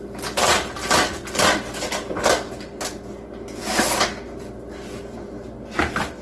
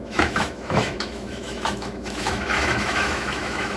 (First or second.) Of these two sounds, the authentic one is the first